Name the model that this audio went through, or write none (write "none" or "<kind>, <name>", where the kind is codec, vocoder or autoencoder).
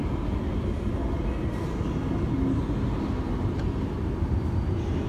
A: none